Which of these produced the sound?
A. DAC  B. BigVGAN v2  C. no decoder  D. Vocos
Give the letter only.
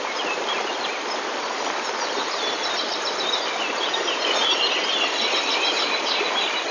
B